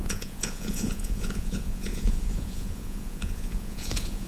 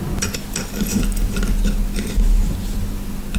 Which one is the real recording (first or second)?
second